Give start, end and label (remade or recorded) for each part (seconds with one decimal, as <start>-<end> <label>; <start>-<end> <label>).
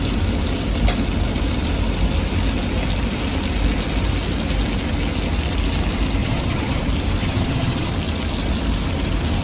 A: 0.0-6.2 recorded; 6.2-6.8 remade; 6.8-7.2 recorded; 7.2-7.9 remade; 7.9-9.4 recorded